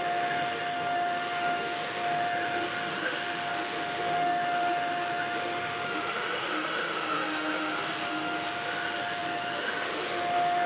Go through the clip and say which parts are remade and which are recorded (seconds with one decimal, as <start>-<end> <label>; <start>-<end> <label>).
0.0-10.7 remade